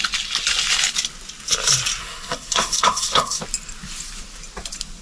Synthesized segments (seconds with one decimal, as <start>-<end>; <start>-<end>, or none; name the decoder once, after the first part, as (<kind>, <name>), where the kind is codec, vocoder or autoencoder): 2.0-3.4 (codec, SNAC)